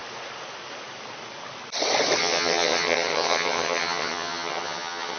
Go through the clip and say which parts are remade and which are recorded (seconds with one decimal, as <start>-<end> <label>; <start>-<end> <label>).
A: 0.0-2.2 recorded; 2.2-5.2 remade